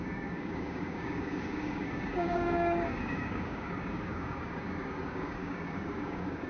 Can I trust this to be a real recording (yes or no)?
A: no